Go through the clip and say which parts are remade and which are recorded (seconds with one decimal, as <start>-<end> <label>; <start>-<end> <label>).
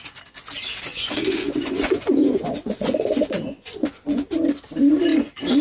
0.0-0.9 recorded; 0.9-4.3 remade; 4.3-5.6 recorded